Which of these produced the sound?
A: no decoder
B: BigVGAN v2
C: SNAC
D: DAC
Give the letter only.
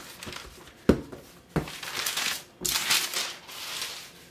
A